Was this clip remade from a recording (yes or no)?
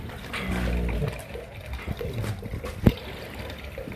no